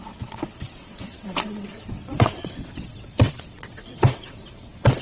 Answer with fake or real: fake